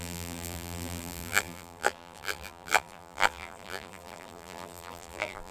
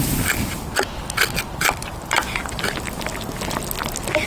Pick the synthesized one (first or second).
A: first